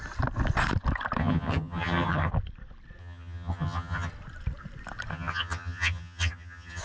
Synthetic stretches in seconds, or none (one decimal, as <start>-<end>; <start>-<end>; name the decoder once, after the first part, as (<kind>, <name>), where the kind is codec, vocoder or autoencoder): 1.2-2.3 (vocoder, HiFi-GAN); 3.0-4.1; 5.1-6.8